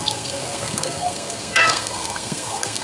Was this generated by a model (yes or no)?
yes